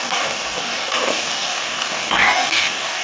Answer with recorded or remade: remade